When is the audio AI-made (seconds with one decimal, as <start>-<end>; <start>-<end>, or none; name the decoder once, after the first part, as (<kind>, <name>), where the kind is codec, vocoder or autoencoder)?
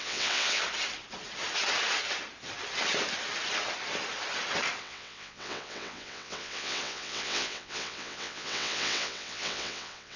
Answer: 0.0-0.6 (vocoder, WaveNeXt); 4.8-10.2